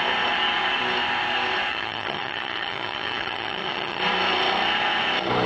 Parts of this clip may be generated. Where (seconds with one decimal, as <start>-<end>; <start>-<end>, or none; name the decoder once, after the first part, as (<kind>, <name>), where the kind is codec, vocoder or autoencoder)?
1.7-4.0 (vocoder, HiFi-GAN)